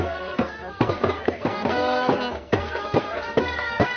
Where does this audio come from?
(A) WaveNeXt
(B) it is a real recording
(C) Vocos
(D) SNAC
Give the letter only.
D